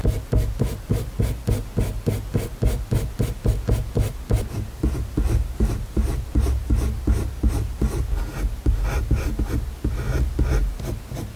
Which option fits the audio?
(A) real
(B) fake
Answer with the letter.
A